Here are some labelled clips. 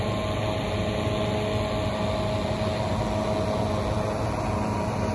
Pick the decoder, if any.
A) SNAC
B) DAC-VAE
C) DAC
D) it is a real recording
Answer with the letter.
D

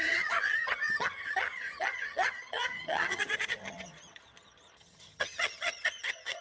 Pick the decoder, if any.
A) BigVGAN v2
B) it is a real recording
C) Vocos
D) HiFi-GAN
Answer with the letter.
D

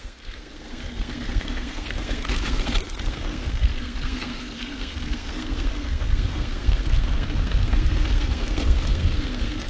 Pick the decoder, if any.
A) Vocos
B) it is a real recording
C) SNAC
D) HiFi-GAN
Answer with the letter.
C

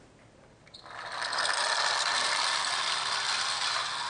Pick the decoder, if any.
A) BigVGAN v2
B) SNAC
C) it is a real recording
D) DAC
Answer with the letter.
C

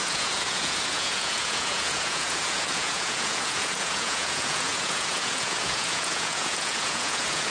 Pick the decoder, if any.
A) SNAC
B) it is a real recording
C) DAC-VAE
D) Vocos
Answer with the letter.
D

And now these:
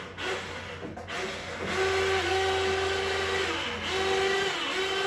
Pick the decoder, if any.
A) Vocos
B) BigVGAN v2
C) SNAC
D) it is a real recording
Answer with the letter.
D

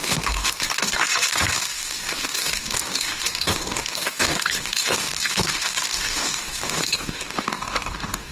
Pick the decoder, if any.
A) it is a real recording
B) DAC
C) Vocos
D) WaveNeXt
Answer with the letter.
B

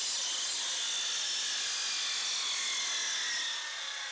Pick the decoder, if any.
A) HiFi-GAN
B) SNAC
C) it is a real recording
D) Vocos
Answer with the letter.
C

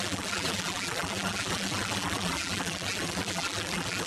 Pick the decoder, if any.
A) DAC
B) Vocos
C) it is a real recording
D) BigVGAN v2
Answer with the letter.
D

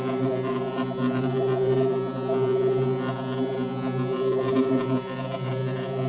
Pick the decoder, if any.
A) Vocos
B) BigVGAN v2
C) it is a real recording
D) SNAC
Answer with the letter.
A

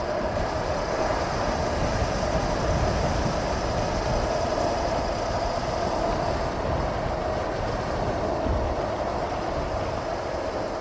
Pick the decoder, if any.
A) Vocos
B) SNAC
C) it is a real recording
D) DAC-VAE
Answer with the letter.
C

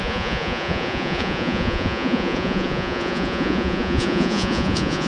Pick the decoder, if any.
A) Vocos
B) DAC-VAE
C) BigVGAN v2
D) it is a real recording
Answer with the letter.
A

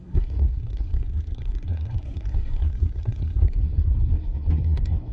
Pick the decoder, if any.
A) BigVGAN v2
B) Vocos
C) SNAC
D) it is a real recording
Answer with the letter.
C